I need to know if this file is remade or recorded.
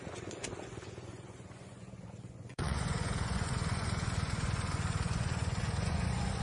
remade